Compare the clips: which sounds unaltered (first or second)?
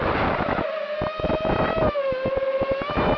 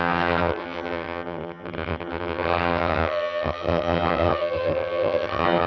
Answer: first